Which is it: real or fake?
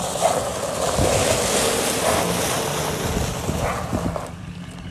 real